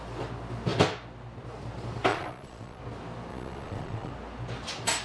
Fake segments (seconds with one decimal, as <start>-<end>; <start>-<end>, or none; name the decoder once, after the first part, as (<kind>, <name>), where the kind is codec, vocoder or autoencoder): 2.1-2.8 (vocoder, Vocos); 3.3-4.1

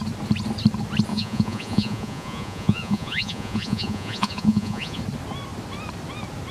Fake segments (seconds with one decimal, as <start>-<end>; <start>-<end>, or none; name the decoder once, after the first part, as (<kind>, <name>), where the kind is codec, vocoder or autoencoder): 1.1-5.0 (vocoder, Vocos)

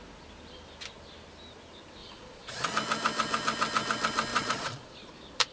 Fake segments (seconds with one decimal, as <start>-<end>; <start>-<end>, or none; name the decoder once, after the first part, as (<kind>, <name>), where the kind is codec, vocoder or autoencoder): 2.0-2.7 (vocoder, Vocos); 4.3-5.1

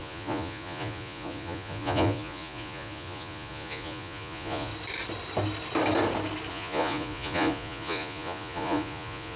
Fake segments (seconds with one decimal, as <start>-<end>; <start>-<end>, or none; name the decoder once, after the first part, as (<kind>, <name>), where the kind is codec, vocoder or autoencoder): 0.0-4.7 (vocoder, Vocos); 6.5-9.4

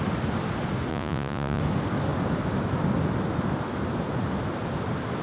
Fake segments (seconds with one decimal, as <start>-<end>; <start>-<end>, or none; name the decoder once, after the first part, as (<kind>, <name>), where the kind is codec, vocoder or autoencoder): 0.9-1.6 (vocoder, Vocos)

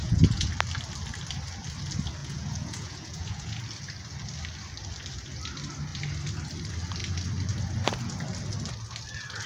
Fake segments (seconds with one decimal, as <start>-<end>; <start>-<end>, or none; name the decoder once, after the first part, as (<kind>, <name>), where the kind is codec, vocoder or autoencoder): 0.0-0.5 (vocoder, Vocos); 2.2-3.6